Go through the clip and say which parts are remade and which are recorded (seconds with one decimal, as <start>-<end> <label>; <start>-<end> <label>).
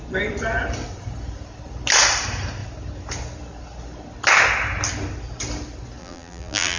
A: 0.0-6.0 recorded; 6.0-6.8 remade